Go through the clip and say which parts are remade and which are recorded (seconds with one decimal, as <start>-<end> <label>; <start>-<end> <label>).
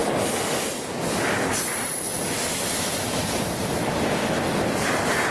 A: 0.0-5.3 remade